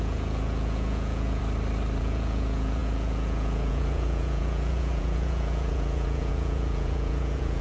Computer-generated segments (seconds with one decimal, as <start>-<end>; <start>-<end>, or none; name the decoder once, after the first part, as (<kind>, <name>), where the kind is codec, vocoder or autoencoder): 0.0-1.4 (vocoder, Vocos); 2.0-7.6